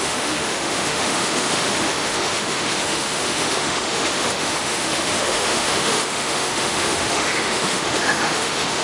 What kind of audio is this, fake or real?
fake